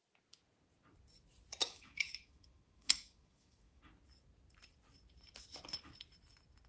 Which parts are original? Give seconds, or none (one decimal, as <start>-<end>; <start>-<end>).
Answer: 0.0-1.6; 3.8-6.7